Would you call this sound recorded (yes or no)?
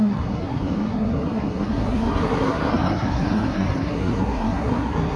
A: no